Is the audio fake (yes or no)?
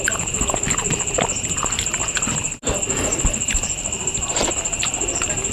no